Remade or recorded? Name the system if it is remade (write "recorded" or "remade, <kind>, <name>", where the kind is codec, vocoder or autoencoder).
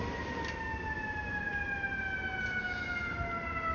recorded